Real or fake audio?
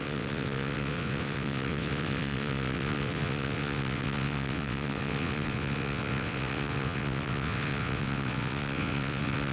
fake